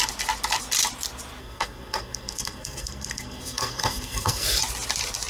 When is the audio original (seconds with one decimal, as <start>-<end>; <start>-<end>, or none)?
0.0-1.4; 4.6-5.3

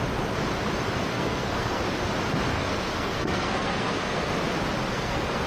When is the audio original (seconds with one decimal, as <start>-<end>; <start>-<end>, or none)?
0.0-1.1; 1.8-2.5; 4.3-4.9